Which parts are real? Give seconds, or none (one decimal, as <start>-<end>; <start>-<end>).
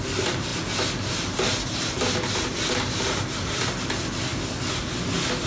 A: 0.0-5.5